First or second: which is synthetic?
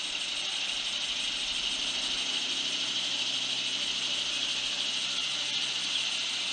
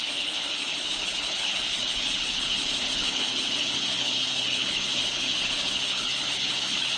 second